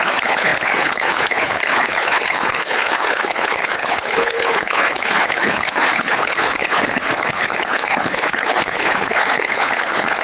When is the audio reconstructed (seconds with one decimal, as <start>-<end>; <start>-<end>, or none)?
0.0-10.2